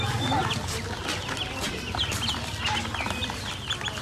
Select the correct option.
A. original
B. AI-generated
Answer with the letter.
B